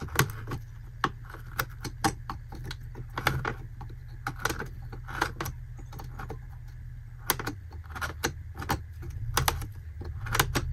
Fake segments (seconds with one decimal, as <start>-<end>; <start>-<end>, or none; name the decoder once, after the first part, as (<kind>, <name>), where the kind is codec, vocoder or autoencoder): none